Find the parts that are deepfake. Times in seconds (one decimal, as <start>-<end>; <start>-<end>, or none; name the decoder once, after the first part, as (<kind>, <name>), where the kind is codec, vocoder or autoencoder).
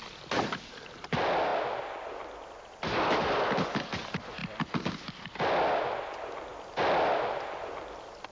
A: none